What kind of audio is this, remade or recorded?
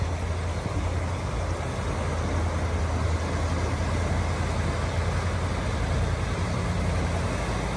recorded